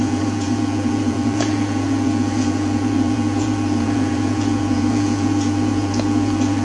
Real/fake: fake